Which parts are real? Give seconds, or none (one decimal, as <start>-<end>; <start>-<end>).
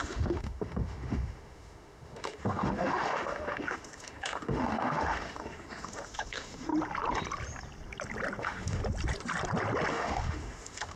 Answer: 6.7-8.4; 8.8-9.9